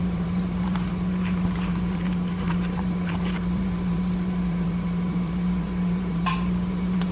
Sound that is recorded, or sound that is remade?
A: remade